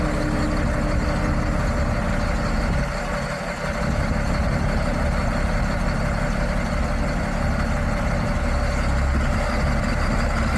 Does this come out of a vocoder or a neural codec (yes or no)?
no